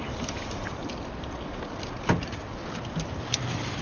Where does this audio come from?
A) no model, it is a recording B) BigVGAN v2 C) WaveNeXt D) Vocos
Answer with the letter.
A